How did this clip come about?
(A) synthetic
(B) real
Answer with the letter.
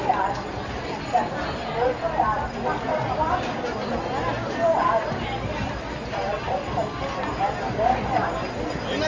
B